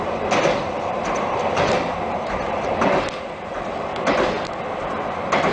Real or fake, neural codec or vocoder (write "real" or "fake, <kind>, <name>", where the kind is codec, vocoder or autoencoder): real